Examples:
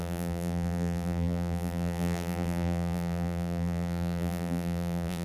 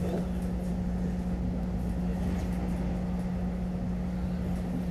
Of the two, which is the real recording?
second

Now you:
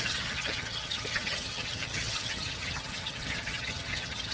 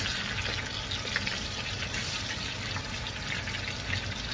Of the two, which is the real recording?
second